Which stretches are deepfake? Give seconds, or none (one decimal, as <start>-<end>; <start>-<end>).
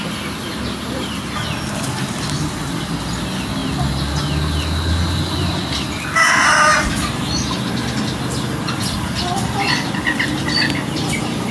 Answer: none